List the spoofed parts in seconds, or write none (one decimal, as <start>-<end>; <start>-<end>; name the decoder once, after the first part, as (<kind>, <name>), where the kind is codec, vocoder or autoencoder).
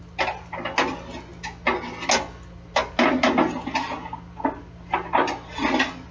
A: none